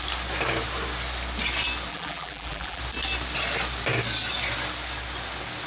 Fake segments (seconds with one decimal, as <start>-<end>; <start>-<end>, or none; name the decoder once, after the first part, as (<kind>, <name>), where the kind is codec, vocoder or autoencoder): 1.9-2.8 (vocoder, BigVGAN v2)